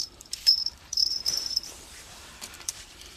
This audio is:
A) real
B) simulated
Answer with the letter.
B